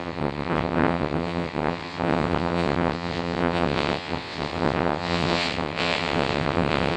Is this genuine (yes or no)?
no